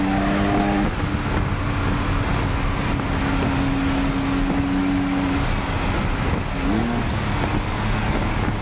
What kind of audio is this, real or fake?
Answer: real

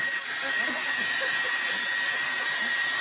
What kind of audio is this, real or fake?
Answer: real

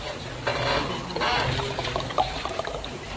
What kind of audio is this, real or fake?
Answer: real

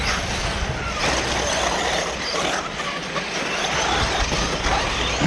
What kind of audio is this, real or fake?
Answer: real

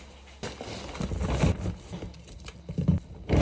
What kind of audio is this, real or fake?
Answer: real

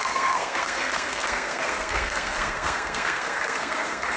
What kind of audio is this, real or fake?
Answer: fake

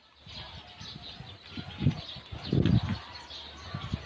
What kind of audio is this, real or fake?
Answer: real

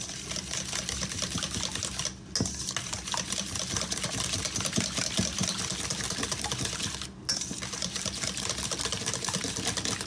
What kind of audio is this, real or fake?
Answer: real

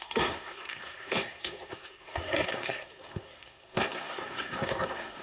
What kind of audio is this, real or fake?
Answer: fake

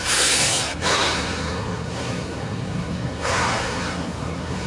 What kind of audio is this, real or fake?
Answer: fake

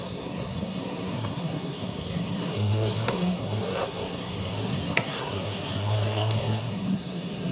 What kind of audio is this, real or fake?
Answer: fake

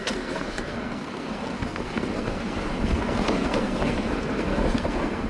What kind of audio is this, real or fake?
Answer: fake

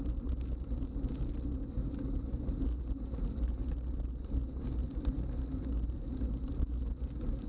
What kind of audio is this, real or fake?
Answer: real